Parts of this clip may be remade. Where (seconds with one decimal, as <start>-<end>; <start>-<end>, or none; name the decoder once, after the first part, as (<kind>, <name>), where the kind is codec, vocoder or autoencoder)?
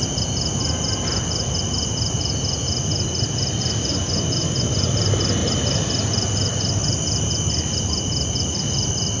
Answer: 3.9-4.9 (vocoder, Vocos)